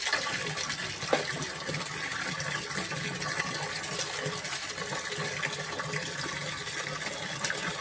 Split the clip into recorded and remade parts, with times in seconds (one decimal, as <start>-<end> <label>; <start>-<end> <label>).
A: 0.0-7.8 recorded